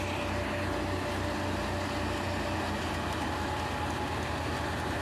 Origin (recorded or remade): recorded